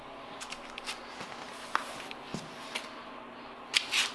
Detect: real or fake real